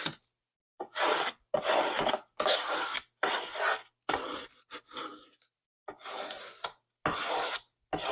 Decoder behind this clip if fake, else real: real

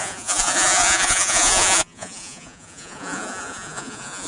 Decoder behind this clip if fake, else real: fake, vocoder, Vocos